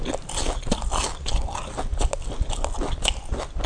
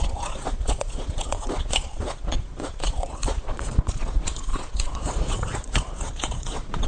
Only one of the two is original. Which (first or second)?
first